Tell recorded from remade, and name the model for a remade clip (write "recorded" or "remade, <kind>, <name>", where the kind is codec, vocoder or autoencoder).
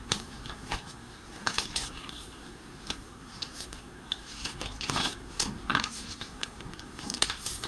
remade, codec, SNAC